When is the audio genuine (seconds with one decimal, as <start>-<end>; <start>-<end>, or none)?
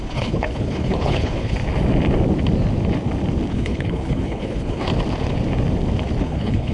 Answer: 1.6-3.5; 4.9-6.2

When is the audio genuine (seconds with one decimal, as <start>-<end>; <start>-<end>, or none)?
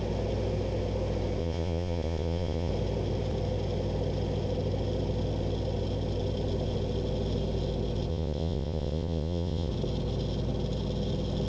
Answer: 0.0-1.4; 2.7-8.1; 9.7-11.5